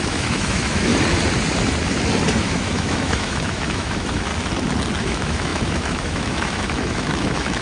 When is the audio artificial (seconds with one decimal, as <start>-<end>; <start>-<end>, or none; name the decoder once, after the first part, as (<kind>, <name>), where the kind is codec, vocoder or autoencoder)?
0.0-0.9 (autoencoder, DAC-VAE); 2.4-4.3; 5.0-7.6